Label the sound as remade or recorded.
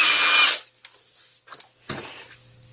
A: recorded